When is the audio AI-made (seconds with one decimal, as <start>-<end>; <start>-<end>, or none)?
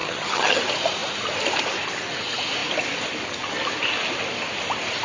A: 0.0-0.6